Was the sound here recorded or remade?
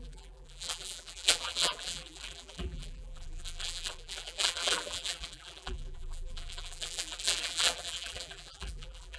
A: remade